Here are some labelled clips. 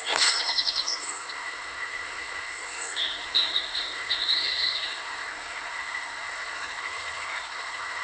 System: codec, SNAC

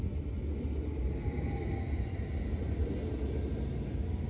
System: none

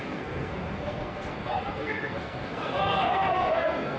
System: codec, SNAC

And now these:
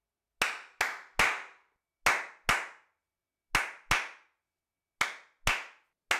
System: none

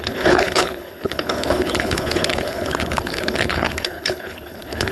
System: codec, HILCodec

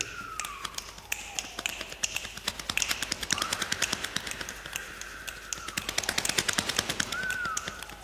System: none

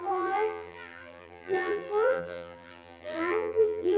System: vocoder, BigVGAN v2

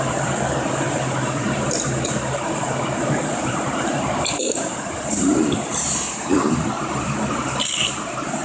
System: vocoder, BigVGAN v2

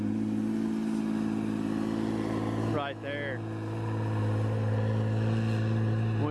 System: none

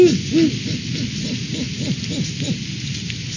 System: none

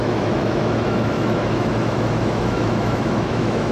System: autoencoder, DAC-VAE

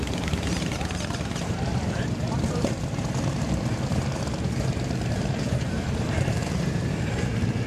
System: vocoder, BigVGAN v2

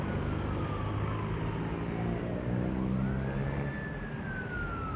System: none